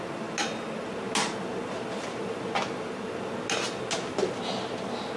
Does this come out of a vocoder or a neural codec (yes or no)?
no